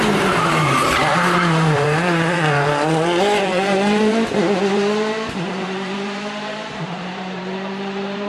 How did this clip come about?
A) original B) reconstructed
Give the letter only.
B